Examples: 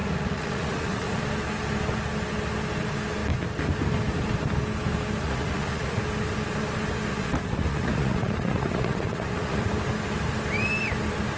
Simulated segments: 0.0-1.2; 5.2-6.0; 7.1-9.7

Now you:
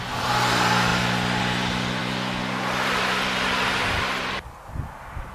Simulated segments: none

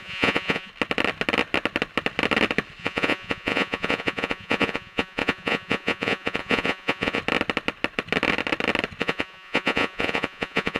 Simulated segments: 0.0-0.7; 2.8-7.2; 9.0-10.8

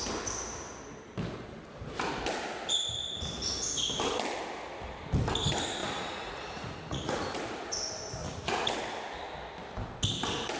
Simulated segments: 5.8-7.4; 8.2-8.8